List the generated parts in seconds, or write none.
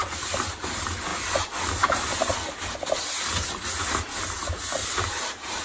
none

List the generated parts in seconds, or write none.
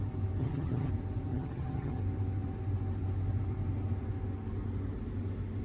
0.4-0.9 (vocoder, HiFi-GAN); 1.3-2.0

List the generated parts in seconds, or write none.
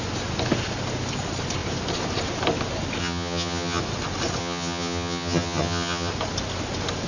3.0-3.8 (vocoder, HiFi-GAN); 4.4-6.1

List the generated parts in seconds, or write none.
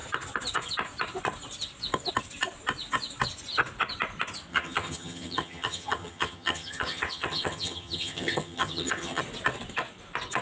4.5-9.2 (vocoder, HiFi-GAN)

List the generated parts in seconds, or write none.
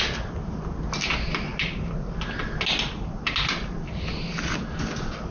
none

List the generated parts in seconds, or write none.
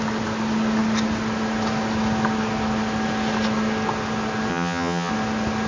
4.5-5.1 (vocoder, HiFi-GAN)